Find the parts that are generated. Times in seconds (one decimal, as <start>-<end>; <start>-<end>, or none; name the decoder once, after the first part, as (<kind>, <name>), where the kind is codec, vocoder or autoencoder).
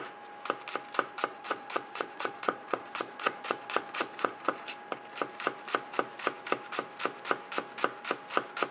1.3-4.7 (vocoder, Vocos)